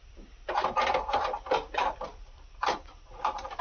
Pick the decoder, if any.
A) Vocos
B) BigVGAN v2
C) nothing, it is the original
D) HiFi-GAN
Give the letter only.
B